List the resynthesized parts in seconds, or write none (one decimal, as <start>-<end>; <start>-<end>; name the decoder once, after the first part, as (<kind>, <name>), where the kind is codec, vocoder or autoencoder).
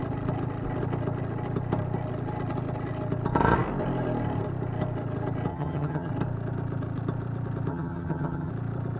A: 5.5-6.1 (vocoder, HiFi-GAN); 7.7-8.5